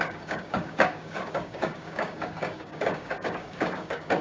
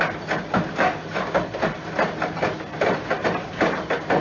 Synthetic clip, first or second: first